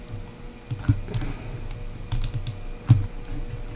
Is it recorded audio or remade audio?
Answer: recorded